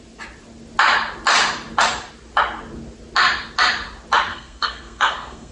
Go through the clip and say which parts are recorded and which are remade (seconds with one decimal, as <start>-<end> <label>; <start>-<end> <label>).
0.0-4.3 recorded; 4.3-5.5 remade